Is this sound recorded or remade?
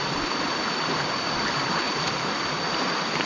recorded